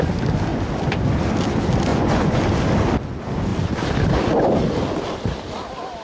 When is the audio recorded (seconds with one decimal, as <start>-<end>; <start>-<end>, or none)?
0.0-1.9; 2.4-6.0